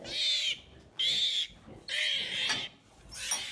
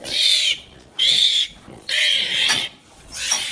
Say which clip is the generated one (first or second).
second